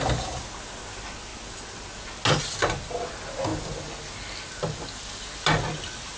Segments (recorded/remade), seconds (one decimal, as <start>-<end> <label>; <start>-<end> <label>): 0.0-6.2 recorded